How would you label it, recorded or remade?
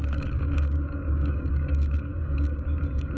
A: remade